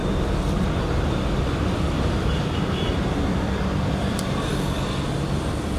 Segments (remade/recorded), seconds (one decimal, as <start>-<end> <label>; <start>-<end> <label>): 0.0-4.5 remade; 4.5-5.8 recorded